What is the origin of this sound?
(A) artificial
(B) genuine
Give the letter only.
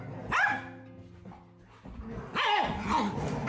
B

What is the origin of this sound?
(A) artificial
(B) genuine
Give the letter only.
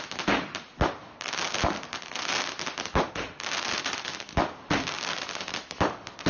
B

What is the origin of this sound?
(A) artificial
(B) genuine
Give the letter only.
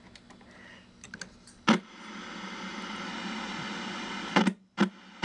B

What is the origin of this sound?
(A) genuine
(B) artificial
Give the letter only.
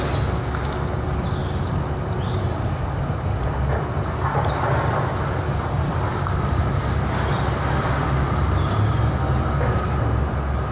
A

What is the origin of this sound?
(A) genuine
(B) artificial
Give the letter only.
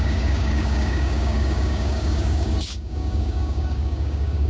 B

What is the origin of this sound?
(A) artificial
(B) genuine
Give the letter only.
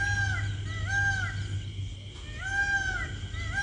B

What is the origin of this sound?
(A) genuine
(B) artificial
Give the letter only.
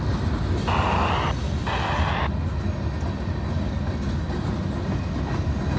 A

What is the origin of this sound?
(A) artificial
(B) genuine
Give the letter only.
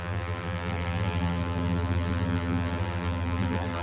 A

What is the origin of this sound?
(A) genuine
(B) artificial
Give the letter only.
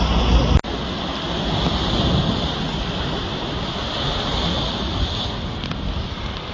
A